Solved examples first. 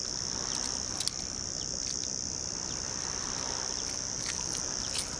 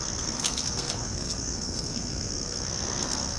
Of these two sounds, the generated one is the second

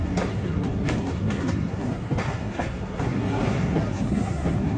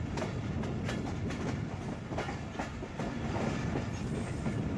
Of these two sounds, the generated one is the first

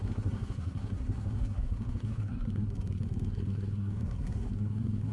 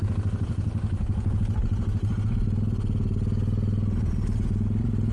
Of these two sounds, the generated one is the first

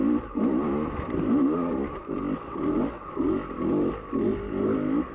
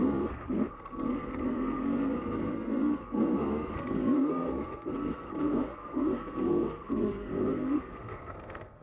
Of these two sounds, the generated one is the second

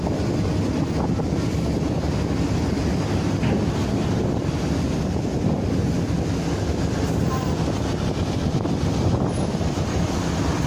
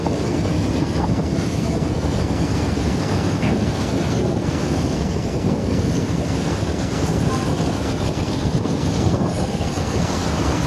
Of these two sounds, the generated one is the second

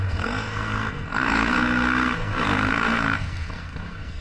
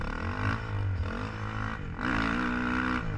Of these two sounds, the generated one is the first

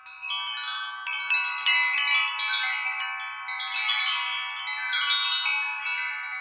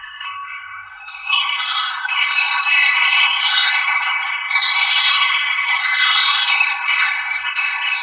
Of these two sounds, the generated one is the second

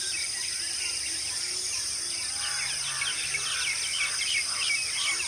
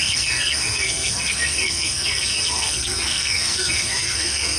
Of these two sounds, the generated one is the second